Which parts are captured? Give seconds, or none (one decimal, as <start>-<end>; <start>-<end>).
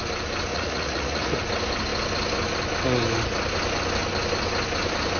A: 0.0-0.5; 1.4-5.2